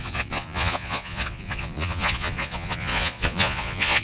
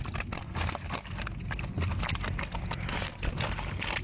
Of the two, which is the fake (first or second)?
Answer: first